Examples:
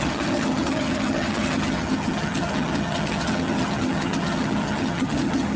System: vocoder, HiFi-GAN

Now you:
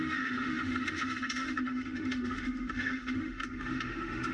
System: autoencoder, DAC-VAE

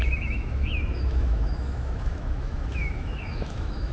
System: autoencoder, DAC-VAE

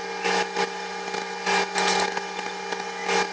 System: none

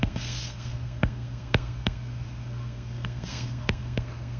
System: codec, SNAC